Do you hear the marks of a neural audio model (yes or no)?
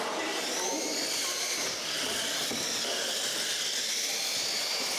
no